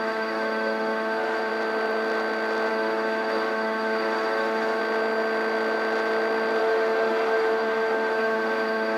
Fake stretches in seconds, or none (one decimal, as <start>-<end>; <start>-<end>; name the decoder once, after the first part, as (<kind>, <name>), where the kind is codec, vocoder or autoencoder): 0.0-1.5 (autoencoder, DAC-VAE); 2.7-4.8; 6.6-9.0